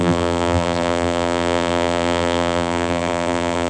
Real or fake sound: fake